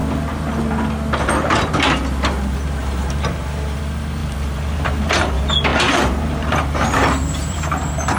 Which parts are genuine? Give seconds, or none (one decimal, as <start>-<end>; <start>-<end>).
0.0-2.8; 3.8-4.2; 5.3-5.7